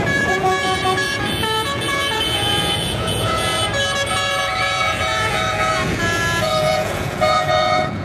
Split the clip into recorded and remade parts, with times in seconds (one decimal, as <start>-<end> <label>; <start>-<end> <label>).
0.0-3.5 remade; 3.5-4.1 recorded; 4.1-8.0 remade